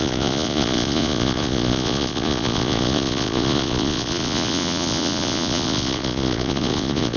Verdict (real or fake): fake